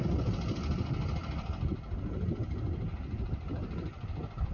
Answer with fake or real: real